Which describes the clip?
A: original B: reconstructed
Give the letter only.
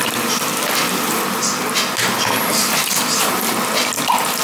A